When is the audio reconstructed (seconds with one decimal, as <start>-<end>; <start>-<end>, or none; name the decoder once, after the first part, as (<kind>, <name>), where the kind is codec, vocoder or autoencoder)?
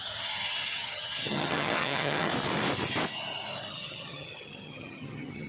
0.0-2.3 (vocoder, HiFi-GAN); 3.7-5.5